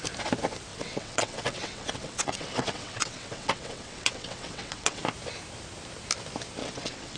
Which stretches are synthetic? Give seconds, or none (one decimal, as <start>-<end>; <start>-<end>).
0.7-5.0; 6.6-7.2